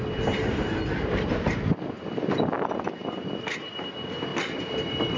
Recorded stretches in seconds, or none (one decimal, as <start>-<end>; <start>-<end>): 0.0-5.2